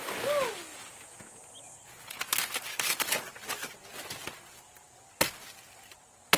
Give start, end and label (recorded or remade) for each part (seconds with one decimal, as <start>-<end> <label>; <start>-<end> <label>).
0.0-0.7 recorded; 0.7-2.3 remade; 2.3-6.4 recorded